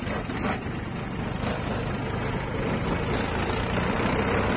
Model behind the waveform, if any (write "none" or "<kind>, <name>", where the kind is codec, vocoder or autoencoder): none